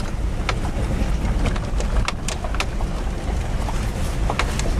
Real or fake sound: real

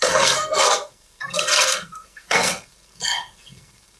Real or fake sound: fake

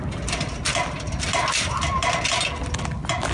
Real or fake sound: real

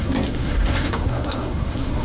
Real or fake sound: fake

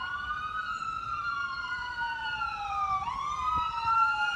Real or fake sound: fake